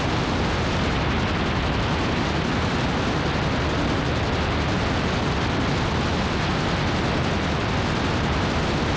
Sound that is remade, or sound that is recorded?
recorded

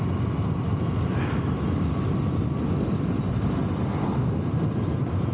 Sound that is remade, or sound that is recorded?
recorded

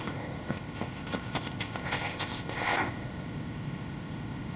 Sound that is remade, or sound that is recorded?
remade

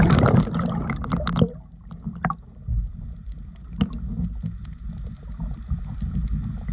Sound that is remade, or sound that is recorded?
recorded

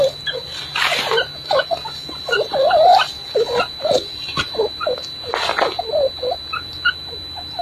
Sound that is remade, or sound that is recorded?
recorded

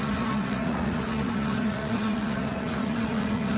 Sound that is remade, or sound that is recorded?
remade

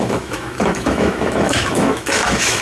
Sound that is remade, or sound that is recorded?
remade